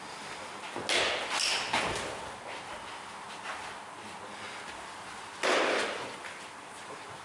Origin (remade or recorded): recorded